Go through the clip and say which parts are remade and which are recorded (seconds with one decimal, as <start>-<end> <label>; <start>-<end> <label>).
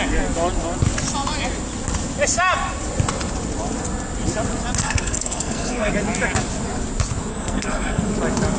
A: 0.0-4.8 recorded; 4.8-5.9 remade; 5.9-7.3 recorded; 7.3-8.1 remade; 8.1-8.6 recorded